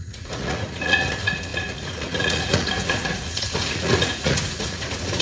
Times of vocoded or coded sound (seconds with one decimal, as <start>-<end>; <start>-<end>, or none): 0.0-5.2